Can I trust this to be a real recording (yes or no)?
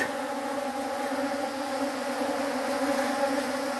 no